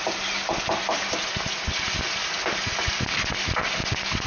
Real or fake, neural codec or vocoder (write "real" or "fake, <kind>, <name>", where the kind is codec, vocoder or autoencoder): real